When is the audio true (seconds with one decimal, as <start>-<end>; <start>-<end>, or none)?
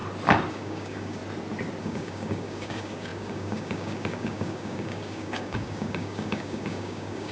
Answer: 0.0-0.5; 1.2-1.8